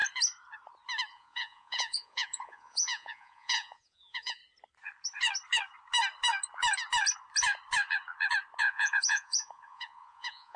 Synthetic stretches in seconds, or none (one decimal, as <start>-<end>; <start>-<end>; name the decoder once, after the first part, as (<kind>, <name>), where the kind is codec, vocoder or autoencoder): 1.1-4.4 (vocoder, Vocos); 8.6-10.6